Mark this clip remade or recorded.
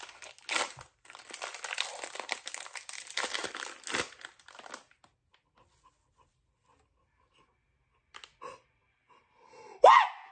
recorded